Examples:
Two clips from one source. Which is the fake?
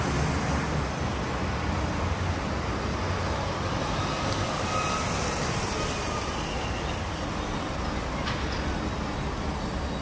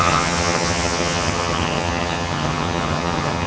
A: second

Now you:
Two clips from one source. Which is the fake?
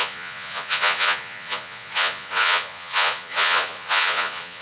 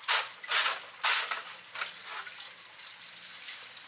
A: first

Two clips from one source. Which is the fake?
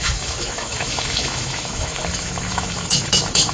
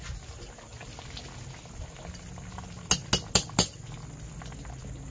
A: first